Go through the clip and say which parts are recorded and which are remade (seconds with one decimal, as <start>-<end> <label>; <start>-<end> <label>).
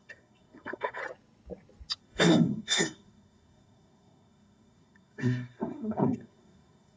0.0-1.0 remade; 1.0-2.0 recorded; 2.0-7.0 remade